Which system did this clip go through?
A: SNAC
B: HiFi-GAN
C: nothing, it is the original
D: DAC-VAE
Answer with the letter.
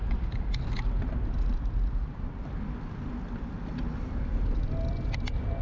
C